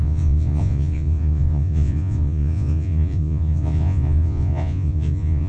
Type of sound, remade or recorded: remade